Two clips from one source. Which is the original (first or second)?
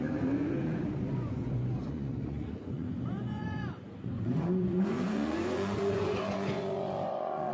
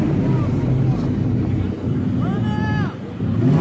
second